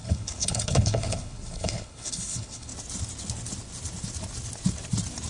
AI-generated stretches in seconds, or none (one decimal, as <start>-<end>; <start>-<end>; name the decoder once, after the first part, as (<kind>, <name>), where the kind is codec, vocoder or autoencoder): 0.0-2.7 (codec, HILCodec)